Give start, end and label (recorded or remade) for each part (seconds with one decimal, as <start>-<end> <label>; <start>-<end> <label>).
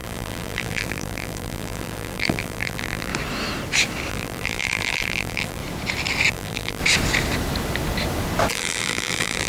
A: 0.0-3.1 remade; 3.1-4.1 recorded; 4.1-5.6 remade; 5.6-6.3 recorded; 6.3-6.8 remade; 6.8-8.5 recorded; 8.5-9.5 remade